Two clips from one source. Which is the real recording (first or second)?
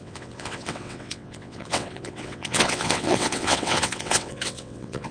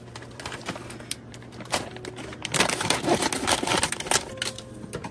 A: second